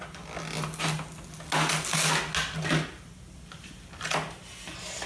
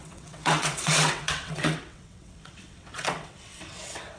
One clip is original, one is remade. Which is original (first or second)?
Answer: first